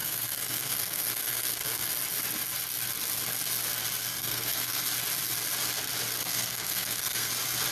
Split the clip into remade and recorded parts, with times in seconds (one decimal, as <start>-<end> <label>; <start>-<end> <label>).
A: 0.0-1.9 remade; 1.9-4.0 recorded; 4.0-4.8 remade; 4.8-6.2 recorded; 6.2-7.3 remade; 7.3-7.7 recorded